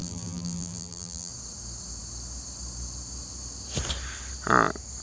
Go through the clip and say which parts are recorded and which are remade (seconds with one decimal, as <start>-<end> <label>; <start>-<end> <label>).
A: 0.0-1.3 remade; 1.3-5.0 recorded